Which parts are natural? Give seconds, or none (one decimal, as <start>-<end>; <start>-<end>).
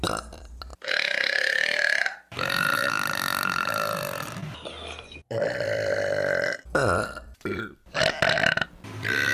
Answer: 0.7-2.1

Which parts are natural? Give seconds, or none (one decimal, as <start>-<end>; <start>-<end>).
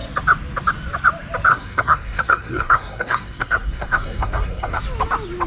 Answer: 0.0-1.5; 4.8-5.5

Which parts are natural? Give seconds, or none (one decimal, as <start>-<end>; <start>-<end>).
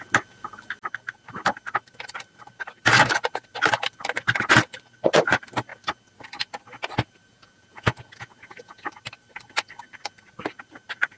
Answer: 0.0-7.2; 8.9-11.2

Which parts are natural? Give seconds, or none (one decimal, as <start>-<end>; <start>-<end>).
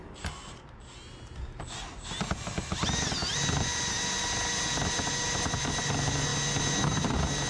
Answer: 0.0-7.5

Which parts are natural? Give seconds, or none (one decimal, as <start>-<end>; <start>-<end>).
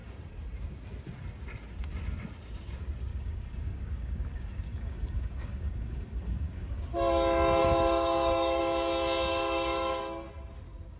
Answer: 0.0-3.1; 6.8-7.6; 8.6-9.3; 10.3-11.0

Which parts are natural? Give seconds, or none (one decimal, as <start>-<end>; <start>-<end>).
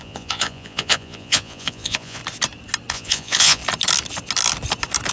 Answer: 2.2-2.9; 3.6-5.1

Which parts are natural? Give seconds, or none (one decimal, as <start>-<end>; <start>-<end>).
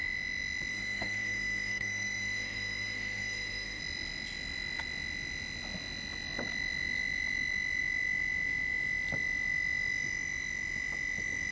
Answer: 0.0-0.7; 3.8-11.5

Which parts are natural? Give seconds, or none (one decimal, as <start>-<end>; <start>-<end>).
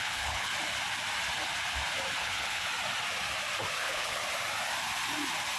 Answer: 0.5-2.2; 2.7-3.8; 4.2-5.6